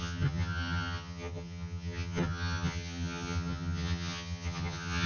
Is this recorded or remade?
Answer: remade